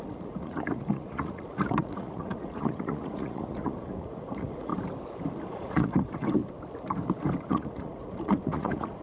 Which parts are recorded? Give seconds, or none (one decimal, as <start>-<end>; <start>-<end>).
4.7-5.5; 6.4-7.4